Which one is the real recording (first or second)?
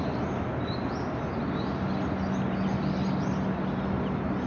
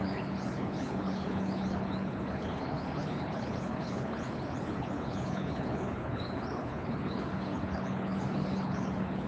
first